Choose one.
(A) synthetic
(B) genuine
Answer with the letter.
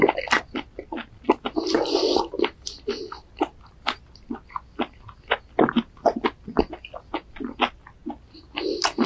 B